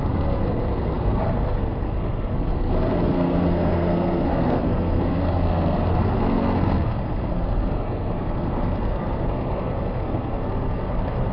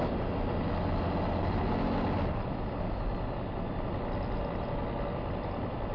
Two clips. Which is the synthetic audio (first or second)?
first